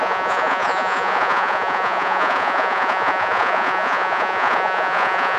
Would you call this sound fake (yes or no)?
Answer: yes